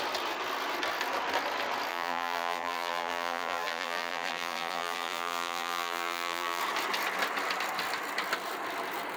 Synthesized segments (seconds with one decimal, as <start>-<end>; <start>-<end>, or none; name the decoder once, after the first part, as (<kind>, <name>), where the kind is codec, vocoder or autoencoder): 1.9-6.6 (vocoder, BigVGAN v2)